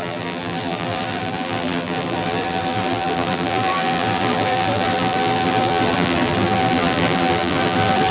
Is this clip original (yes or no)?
no